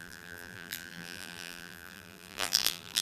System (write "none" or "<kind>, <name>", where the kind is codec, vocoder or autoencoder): vocoder, BigVGAN v2